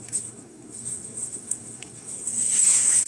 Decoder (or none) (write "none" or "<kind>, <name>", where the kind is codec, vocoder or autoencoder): codec, SNAC